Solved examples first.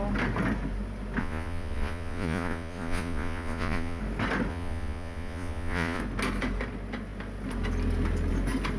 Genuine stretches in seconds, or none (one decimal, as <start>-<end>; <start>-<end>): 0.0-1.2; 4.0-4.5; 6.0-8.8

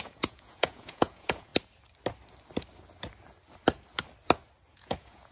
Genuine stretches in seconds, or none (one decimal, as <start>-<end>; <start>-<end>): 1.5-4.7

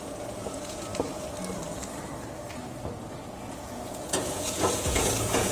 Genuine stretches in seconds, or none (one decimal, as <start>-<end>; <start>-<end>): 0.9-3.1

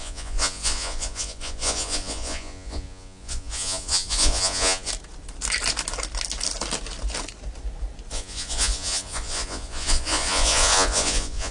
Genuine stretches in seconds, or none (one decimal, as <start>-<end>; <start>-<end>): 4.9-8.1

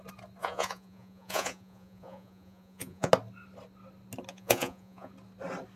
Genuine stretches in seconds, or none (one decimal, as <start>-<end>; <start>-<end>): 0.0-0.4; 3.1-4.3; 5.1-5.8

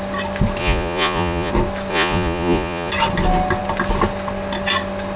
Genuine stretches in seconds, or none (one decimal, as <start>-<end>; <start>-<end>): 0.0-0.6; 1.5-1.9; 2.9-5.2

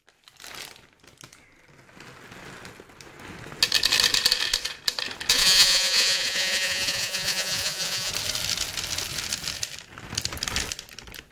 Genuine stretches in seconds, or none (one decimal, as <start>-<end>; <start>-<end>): 0.0-5.3; 8.1-11.3